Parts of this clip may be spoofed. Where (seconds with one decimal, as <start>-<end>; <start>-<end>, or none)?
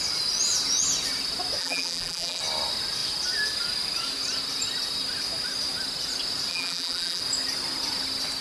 1.6-2.4; 6.5-7.2